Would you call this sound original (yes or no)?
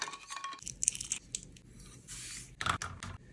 yes